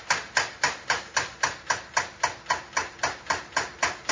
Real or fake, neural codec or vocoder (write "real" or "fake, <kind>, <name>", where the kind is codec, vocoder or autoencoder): real